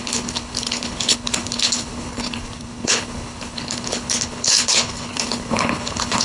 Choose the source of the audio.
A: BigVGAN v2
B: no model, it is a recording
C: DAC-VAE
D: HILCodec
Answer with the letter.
D